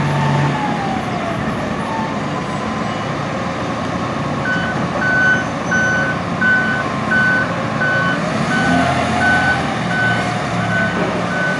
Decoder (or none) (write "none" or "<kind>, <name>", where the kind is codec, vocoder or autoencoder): none